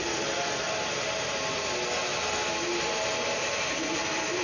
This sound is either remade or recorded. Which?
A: recorded